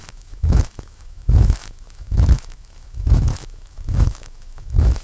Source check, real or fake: fake